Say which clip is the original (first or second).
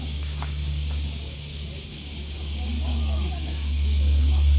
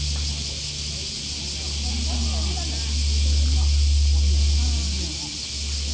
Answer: second